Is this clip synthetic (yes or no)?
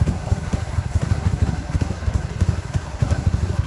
yes